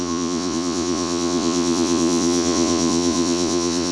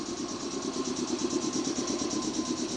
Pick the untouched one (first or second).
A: second